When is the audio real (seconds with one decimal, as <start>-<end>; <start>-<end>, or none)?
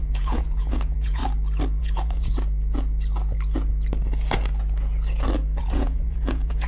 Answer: 1.2-1.8; 2.3-5.6